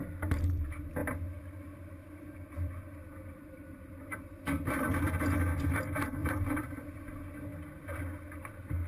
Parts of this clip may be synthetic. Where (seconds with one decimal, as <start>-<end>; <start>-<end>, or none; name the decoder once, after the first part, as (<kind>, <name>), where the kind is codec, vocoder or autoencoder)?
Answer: 1.0-5.4 (vocoder, BigVGAN v2); 6.2-7.0